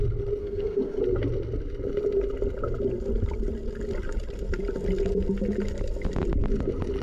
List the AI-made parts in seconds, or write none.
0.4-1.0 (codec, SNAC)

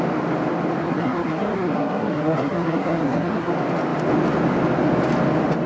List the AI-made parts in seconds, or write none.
0.8-3.5 (codec, SNAC)